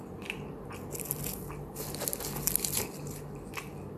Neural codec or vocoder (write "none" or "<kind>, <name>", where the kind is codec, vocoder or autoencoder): none